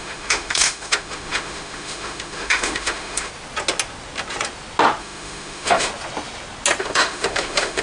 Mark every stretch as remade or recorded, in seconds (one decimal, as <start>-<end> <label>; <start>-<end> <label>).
0.0-3.3 remade; 3.3-5.0 recorded; 5.0-5.9 remade; 5.9-6.8 recorded; 6.8-7.8 remade